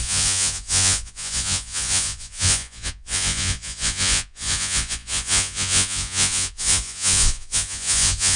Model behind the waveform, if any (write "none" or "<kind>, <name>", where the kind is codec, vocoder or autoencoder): vocoder, Vocos